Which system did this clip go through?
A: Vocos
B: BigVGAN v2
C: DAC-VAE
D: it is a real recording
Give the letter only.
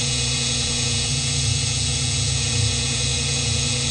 A